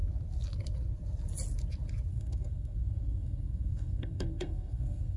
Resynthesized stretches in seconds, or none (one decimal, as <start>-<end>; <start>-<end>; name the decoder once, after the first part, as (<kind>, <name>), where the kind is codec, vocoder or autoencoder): 2.1-5.2 (codec, SNAC)